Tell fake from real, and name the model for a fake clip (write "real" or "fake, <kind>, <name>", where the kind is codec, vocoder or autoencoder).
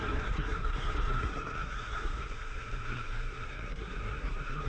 fake, codec, SNAC